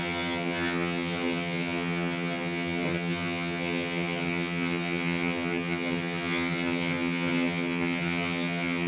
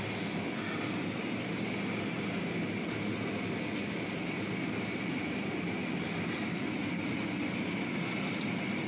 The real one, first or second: second